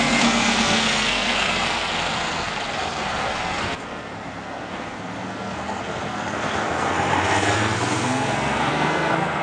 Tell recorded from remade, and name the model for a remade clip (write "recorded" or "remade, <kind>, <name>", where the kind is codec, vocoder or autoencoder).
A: remade, codec, SNAC